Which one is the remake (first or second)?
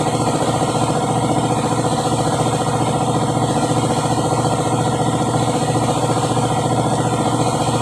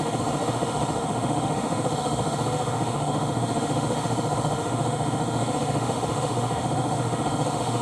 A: second